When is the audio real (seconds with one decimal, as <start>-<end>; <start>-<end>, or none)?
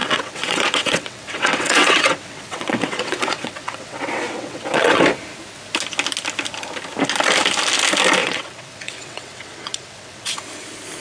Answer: 5.0-8.2; 10.3-11.0